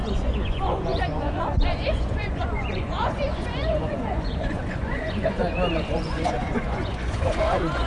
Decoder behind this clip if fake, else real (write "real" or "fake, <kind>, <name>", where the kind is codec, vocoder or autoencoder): fake, vocoder, Vocos